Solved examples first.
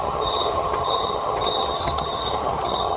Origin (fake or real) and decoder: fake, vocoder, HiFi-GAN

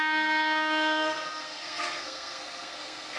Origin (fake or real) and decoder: fake, codec, SNAC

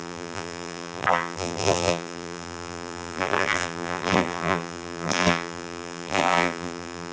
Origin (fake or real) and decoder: fake, vocoder, BigVGAN v2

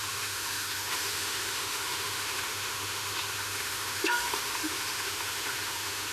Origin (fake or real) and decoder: fake, autoencoder, DAC-VAE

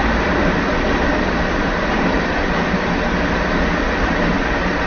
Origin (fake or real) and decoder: fake, vocoder, BigVGAN v2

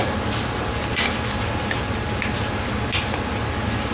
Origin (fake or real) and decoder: real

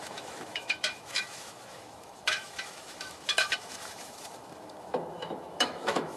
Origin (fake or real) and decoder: fake, autoencoder, DAC-VAE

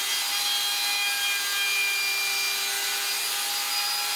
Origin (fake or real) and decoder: real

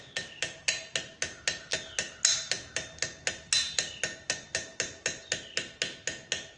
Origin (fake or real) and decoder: real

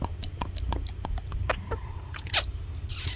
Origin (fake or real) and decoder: real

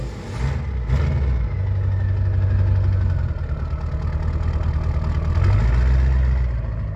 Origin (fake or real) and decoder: real